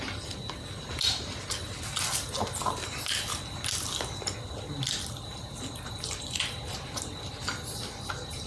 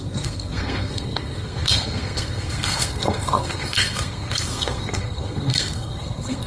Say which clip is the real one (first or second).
first